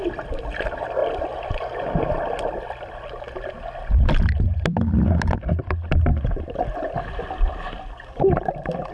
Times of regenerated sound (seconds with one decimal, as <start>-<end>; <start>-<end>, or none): 0.0-6.1; 8.5-8.9